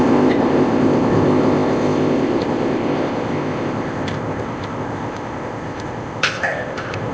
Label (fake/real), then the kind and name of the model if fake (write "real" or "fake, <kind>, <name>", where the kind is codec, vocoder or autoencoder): fake, codec, ZipCodec